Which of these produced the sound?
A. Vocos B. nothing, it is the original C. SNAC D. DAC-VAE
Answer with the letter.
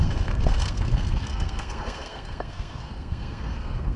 C